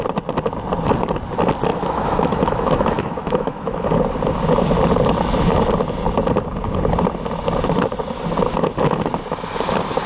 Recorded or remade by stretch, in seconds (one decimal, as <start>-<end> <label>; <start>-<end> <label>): 0.0-1.7 recorded; 1.7-3.8 remade; 3.8-10.1 recorded

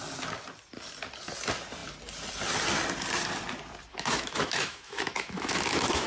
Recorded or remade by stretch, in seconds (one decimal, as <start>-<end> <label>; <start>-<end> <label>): 0.0-3.9 recorded; 3.9-6.1 remade